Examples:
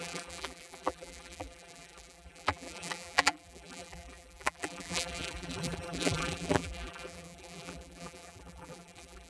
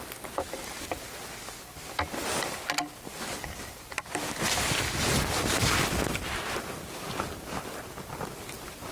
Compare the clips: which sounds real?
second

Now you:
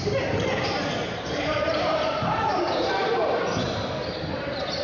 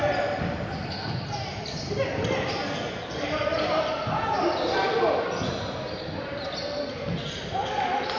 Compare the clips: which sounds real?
second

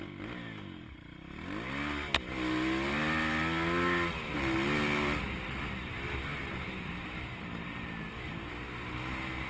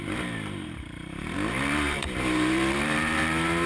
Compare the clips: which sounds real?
first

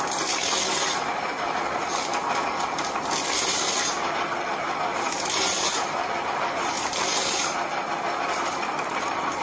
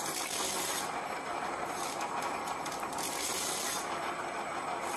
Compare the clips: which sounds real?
first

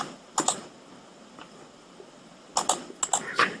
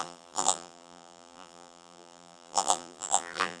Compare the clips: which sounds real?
first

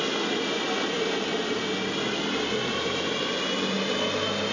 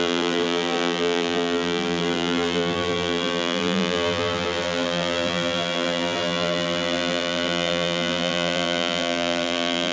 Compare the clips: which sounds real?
first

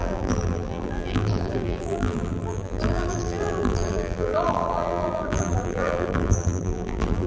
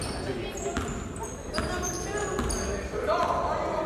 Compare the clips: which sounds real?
second